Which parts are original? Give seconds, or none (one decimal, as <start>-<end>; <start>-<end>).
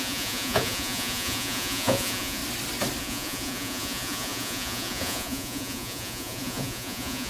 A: 2.4-3.0